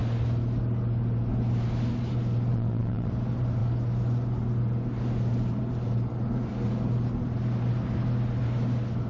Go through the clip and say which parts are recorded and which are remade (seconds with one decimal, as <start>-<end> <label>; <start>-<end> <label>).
0.0-2.5 recorded; 2.5-3.1 remade; 3.1-9.1 recorded